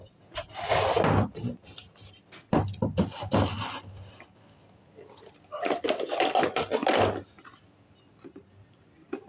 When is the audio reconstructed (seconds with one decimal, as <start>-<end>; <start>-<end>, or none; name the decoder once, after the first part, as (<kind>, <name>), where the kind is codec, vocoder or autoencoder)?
none